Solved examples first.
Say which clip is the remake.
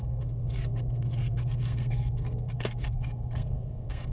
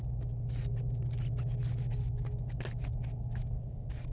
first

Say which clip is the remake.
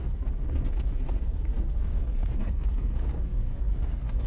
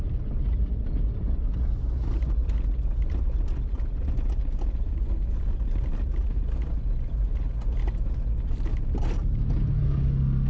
first